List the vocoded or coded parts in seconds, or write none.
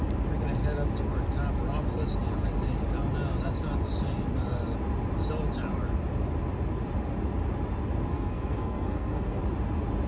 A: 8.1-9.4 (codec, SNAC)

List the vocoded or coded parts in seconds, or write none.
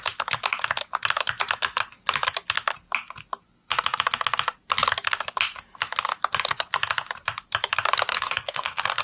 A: 8.1-9.0 (codec, SNAC)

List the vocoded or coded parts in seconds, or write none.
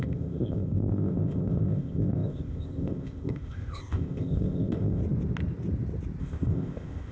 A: 0.0-5.0 (codec, ZipCodec); 6.2-7.1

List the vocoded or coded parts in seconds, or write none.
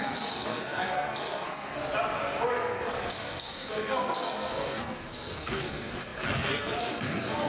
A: 0.0-1.8 (codec, SNAC); 2.5-7.5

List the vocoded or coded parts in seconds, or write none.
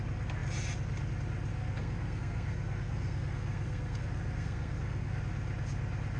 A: 1.5-5.2 (codec, SNAC)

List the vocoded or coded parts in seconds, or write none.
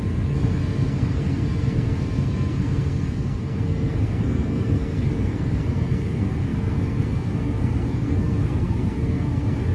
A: 0.0-9.7 (codec, SNAC)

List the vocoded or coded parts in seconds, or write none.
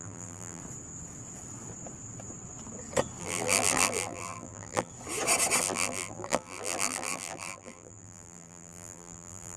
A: 0.0-0.6 (vocoder, BigVGAN v2); 3.2-4.9; 5.6-9.6